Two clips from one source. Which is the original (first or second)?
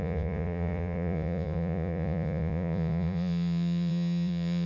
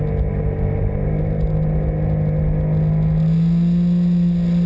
second